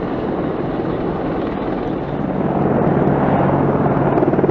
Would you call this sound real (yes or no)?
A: yes